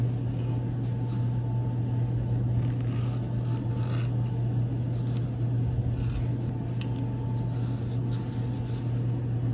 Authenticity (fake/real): real